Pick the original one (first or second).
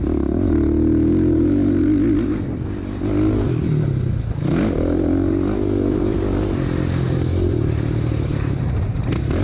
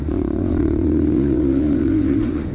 first